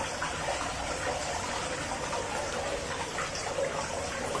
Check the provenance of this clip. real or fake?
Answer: real